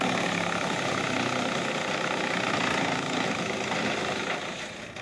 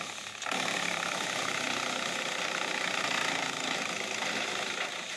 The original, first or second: first